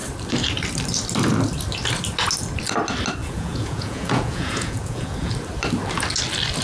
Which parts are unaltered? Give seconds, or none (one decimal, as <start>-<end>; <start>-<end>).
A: 0.0-3.2; 5.3-6.6